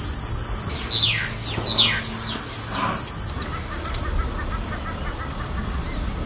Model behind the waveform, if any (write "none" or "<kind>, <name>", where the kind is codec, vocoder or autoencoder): none